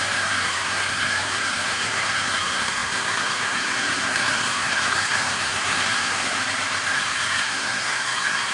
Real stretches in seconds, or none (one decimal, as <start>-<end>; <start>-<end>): 6.4-6.9